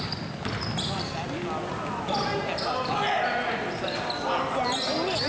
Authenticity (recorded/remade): recorded